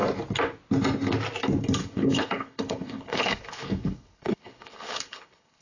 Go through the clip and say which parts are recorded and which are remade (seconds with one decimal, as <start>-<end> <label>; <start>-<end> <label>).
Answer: 0.0-1.8 recorded; 1.8-5.6 remade